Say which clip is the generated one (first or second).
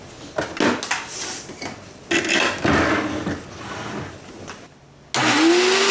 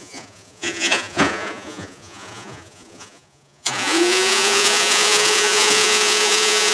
second